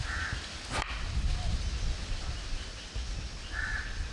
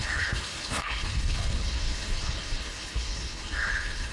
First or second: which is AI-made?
second